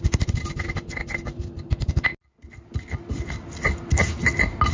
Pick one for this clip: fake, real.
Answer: real